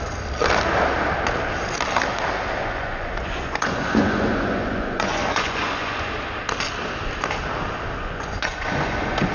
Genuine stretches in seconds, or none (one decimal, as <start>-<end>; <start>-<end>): 0.0-2.6; 6.1-8.0